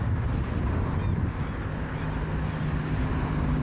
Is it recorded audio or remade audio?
recorded